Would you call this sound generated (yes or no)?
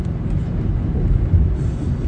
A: no